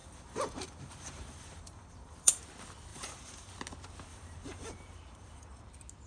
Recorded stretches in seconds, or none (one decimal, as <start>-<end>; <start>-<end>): 2.4-2.9; 3.5-4.1; 5.6-6.1